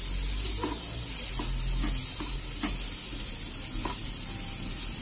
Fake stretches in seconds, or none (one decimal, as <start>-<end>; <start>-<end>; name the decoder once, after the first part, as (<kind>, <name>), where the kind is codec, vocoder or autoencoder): none